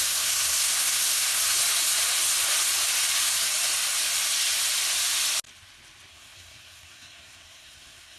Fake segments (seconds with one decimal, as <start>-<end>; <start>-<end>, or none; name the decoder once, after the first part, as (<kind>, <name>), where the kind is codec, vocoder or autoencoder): 0.0-1.4 (codec, SNAC); 6.1-8.2